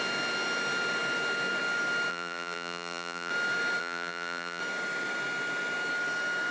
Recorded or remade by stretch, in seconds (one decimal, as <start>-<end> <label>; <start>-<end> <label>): 0.0-2.1 recorded; 2.1-3.3 remade; 3.3-3.8 recorded; 3.8-4.6 remade; 4.6-6.5 recorded